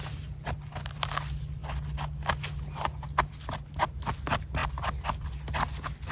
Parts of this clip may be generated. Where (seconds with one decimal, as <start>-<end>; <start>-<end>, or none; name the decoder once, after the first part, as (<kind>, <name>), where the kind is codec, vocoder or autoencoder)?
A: none